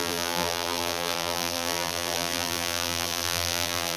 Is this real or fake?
fake